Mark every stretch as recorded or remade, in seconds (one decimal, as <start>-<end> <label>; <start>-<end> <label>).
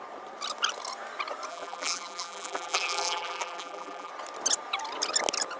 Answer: 0.0-1.5 recorded; 1.5-4.1 remade; 4.1-5.6 recorded